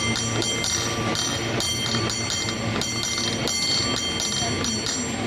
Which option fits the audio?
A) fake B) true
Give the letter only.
B